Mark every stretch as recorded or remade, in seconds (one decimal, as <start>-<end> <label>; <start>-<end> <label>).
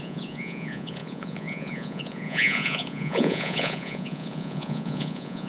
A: 0.0-5.5 remade